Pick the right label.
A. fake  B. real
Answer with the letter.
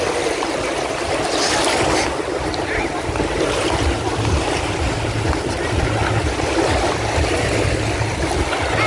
B